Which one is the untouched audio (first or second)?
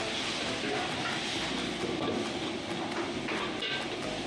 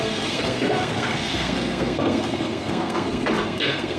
first